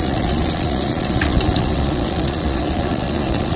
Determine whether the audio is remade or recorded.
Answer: remade